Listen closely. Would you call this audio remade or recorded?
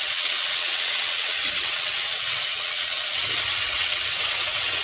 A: remade